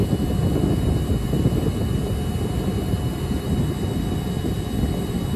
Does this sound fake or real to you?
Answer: real